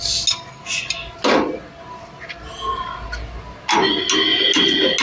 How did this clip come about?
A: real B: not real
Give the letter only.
A